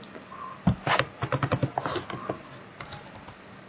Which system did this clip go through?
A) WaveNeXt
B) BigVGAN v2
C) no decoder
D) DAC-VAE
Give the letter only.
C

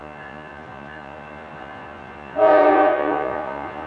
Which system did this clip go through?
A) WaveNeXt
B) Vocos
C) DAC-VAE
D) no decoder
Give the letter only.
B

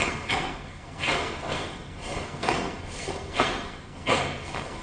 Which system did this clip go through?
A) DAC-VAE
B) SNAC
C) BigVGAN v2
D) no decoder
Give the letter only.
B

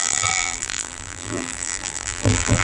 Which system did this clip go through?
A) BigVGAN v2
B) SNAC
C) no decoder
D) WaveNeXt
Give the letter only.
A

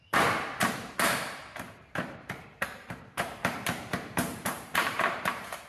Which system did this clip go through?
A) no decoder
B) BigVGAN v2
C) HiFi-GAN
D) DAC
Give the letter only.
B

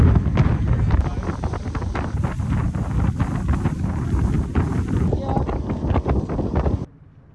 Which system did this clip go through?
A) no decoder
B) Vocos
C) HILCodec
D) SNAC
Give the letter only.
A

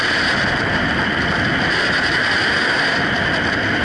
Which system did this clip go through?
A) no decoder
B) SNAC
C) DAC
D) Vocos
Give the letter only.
A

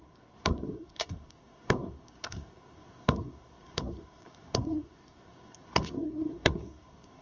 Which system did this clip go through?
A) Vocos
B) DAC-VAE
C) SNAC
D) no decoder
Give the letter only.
C